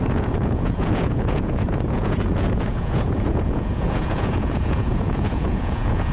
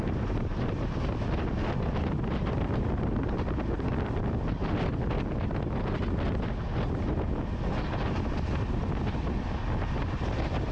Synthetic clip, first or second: first